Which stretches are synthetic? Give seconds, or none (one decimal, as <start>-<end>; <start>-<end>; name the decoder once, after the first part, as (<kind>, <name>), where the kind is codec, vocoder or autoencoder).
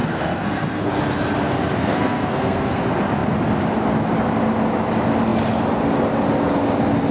0.0-0.9 (codec, SNAC); 1.8-2.8